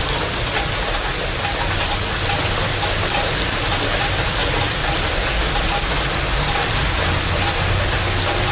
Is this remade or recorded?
recorded